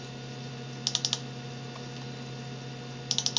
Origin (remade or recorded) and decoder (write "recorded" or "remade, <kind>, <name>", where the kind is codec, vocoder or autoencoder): recorded